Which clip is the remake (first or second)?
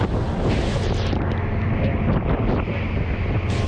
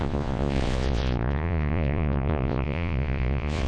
second